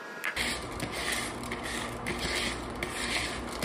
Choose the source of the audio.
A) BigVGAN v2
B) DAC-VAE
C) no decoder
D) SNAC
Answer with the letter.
C